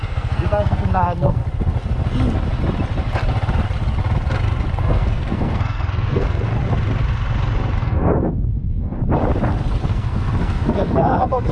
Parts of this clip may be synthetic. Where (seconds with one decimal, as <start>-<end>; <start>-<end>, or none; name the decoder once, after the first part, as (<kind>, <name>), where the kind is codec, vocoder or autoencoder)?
0.0-1.4 (codec, SNAC); 4.8-6.5; 7.8-9.0; 9.7-11.5